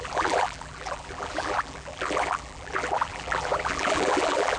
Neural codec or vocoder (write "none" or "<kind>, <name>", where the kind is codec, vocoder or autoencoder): vocoder, BigVGAN v2